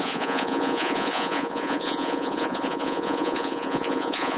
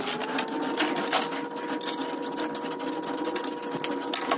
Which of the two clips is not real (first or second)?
first